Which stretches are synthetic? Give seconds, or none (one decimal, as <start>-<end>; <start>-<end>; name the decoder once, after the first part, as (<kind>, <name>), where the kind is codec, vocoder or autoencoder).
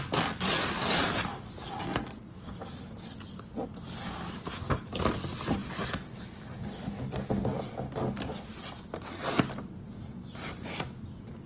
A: none